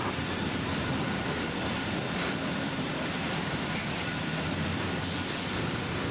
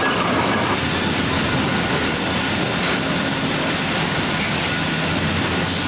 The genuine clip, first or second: second